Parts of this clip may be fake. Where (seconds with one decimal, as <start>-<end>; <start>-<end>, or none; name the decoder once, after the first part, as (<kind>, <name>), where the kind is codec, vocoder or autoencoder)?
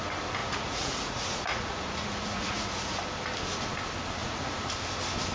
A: 0.4-3.0 (vocoder, Vocos); 4.2-4.7